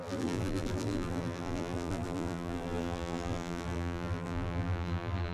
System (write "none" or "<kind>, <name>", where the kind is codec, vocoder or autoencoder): vocoder, BigVGAN v2